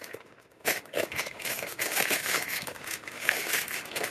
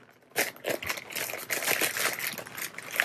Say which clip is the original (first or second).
second